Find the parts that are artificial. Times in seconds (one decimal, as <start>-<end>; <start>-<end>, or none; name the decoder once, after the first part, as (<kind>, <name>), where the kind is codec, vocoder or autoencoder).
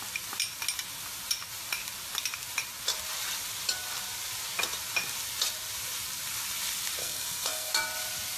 7.0-7.7 (codec, SNAC)